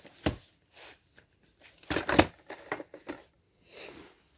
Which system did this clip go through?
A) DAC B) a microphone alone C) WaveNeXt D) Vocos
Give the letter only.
B